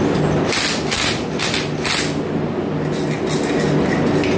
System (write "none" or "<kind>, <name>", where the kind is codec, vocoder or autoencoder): none